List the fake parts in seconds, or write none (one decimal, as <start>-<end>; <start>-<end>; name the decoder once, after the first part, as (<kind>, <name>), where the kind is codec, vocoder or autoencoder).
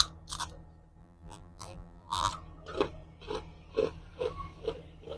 1.0-2.3 (vocoder, BigVGAN v2)